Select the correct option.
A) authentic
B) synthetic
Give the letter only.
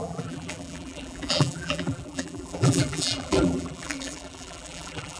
B